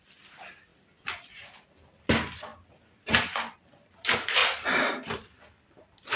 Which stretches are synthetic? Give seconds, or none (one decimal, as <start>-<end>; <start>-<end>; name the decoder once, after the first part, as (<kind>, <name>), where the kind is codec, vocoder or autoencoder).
0.0-2.5 (vocoder, BigVGAN v2); 3.6-6.2